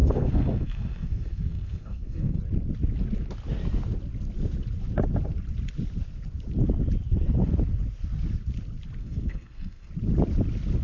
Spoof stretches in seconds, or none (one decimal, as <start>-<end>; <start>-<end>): 0.0-2.4; 9.0-9.9